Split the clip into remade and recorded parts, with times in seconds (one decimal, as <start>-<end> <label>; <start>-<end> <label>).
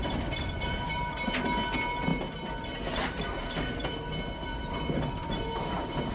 0.0-6.1 recorded